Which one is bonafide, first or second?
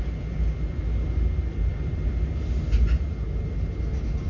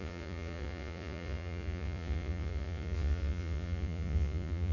first